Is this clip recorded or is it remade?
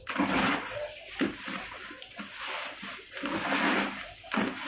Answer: recorded